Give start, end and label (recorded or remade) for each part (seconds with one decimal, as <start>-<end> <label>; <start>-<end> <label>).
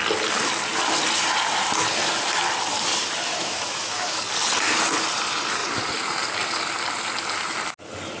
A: 0.0-3.3 recorded; 3.3-4.2 remade; 4.2-8.2 recorded